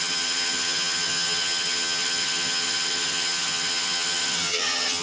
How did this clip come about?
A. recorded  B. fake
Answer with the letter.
B